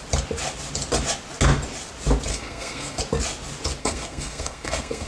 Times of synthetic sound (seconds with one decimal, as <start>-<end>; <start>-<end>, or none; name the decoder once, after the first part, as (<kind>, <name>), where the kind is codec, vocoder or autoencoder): 2.3-3.0 (codec, SNAC); 3.8-5.1

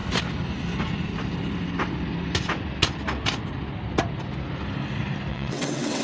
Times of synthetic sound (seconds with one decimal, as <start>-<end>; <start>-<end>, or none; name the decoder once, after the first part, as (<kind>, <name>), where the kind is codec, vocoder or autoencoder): 5.3-6.0 (vocoder, WaveNeXt)